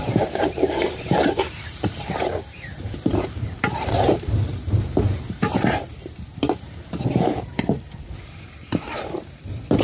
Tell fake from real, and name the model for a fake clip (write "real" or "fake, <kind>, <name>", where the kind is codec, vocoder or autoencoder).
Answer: fake, vocoder, BigVGAN v2